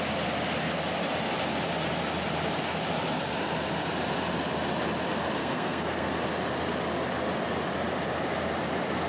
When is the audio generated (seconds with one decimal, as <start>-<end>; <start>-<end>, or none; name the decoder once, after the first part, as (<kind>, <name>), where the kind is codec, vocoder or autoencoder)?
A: 5.4-6.1 (codec, SNAC)